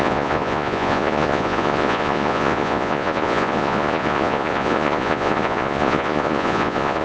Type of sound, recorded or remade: remade